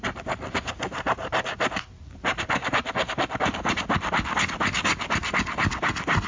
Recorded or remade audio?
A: remade